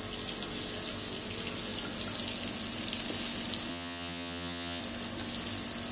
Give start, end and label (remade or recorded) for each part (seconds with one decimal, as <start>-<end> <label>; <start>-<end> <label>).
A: 0.0-3.7 recorded; 3.7-4.8 remade; 4.8-5.9 recorded